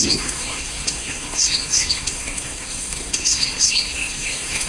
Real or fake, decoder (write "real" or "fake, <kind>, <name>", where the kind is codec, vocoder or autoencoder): fake, codec, SNAC